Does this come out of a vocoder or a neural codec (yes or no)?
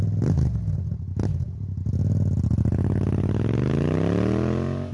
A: no